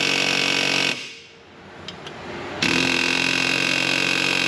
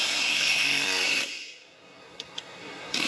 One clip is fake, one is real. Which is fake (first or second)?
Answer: second